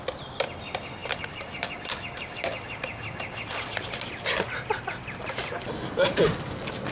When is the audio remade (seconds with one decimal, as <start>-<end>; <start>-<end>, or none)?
1.0-3.9